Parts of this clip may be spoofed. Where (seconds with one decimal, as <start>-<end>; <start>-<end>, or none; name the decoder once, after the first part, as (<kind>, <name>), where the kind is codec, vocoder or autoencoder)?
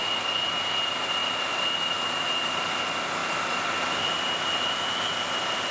3.2-4.9 (vocoder, BigVGAN v2)